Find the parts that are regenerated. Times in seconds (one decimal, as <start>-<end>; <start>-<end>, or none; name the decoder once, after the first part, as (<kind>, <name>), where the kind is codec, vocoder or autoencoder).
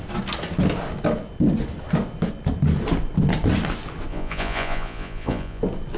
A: 4.1-5.6 (vocoder, Vocos)